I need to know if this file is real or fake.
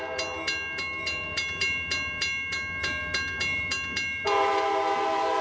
real